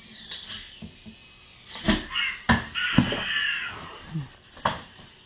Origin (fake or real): real